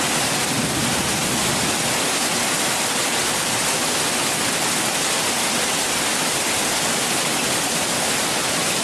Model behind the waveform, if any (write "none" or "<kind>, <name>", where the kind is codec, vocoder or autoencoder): none